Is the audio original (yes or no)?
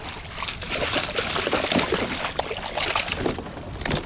yes